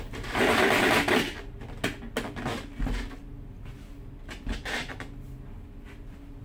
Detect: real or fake real